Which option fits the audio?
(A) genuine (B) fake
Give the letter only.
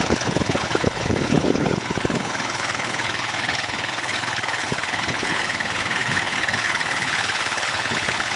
B